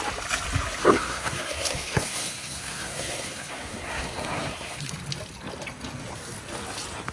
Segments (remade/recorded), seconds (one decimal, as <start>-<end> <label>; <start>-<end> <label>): 0.0-0.8 recorded; 0.8-4.9 remade; 4.9-7.1 recorded

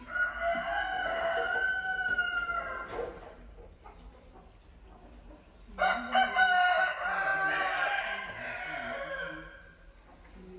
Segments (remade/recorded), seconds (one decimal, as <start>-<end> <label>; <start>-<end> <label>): 0.0-3.1 recorded; 3.1-3.8 remade; 3.8-7.3 recorded; 7.3-8.3 remade; 8.3-10.6 recorded